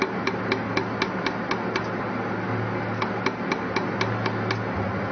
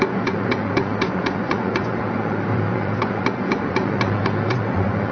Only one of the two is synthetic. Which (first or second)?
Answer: second